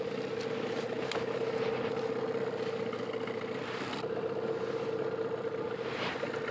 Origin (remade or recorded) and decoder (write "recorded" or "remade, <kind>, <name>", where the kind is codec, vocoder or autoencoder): recorded